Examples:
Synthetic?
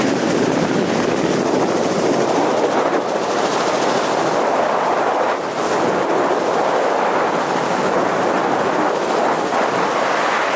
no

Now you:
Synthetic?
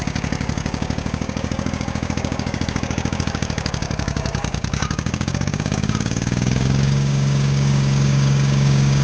yes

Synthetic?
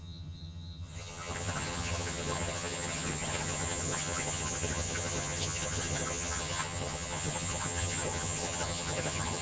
yes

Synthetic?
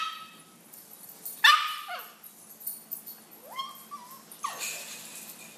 no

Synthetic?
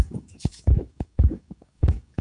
yes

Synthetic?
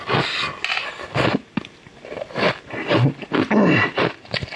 no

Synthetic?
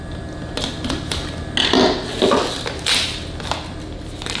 no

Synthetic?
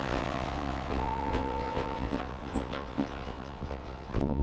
yes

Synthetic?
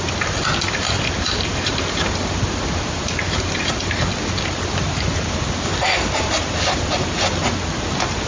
no